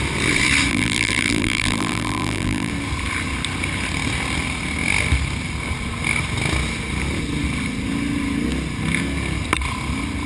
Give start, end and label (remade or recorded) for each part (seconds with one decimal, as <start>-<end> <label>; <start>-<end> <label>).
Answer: 0.0-0.7 recorded; 0.7-2.7 remade; 2.7-10.3 recorded